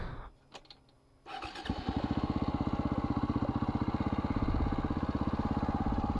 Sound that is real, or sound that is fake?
real